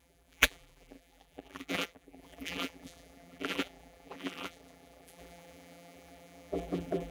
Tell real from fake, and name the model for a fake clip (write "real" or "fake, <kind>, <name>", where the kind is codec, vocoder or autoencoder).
fake, vocoder, BigVGAN v2